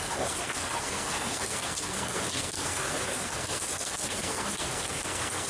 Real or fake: fake